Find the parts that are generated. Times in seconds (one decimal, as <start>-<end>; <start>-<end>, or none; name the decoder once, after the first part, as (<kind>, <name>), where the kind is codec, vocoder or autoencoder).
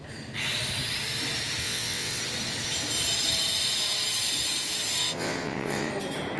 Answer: 1.6-2.2 (vocoder, WaveNeXt); 5.0-5.9